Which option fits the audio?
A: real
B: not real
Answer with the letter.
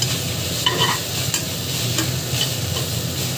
A